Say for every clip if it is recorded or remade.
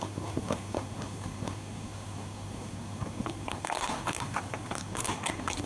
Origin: remade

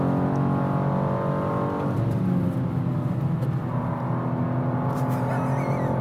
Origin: recorded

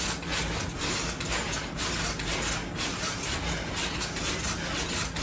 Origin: recorded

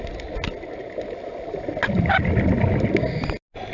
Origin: recorded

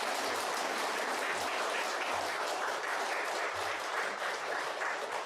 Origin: remade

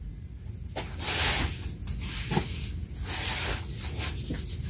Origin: recorded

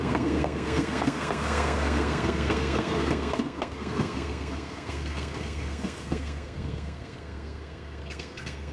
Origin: remade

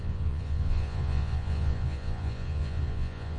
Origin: remade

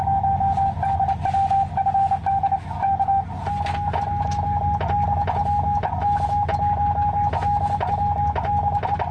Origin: recorded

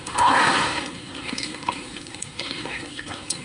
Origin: remade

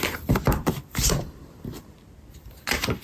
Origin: recorded